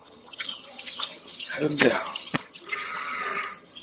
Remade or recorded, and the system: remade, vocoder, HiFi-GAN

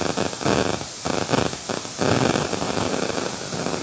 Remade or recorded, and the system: recorded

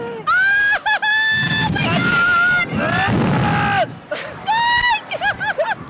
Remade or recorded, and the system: recorded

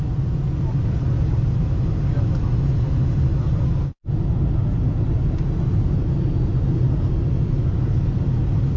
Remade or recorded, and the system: recorded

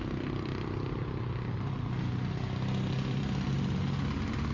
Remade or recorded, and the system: recorded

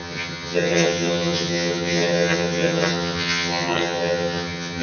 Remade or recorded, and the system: remade, vocoder, HiFi-GAN